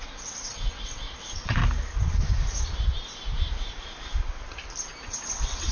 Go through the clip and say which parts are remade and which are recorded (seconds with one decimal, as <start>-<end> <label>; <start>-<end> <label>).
0.0-1.6 remade; 1.6-5.0 recorded; 5.0-5.7 remade

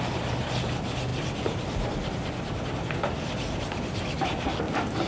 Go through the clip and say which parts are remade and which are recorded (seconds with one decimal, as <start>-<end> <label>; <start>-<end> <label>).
0.0-5.1 recorded